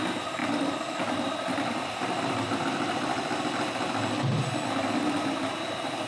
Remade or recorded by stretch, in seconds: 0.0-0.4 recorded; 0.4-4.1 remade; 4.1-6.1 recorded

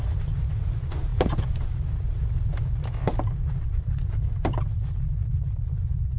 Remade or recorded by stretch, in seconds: 0.0-6.2 recorded

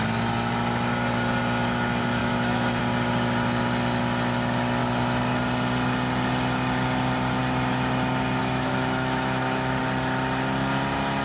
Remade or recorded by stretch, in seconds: 0.0-2.2 recorded; 2.2-2.8 remade; 2.8-8.4 recorded; 8.4-9.8 remade; 9.8-11.2 recorded

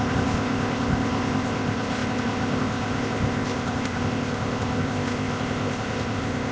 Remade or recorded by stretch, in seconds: 0.0-6.5 remade